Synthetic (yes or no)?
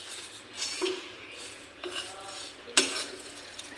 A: yes